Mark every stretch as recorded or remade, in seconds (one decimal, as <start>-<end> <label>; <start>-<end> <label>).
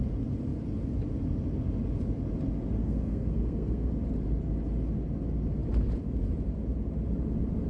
0.0-2.8 recorded; 2.8-3.9 remade; 3.9-7.7 recorded